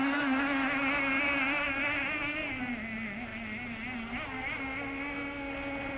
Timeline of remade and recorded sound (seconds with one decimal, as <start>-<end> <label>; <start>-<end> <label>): 0.0-6.0 recorded